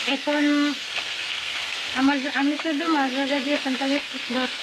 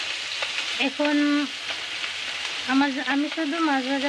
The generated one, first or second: first